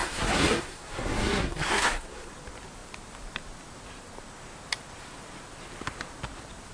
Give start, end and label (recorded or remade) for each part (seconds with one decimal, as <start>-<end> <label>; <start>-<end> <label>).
0.0-2.3 remade; 2.3-6.7 recorded